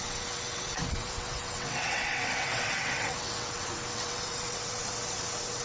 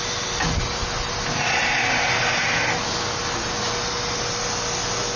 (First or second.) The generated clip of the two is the first